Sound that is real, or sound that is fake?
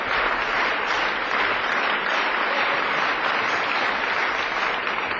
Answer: fake